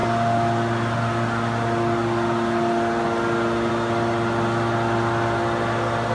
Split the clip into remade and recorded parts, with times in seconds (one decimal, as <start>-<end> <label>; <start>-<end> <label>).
0.0-6.1 recorded